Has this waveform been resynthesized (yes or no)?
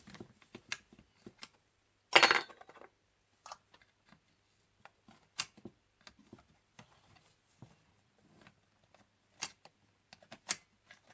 no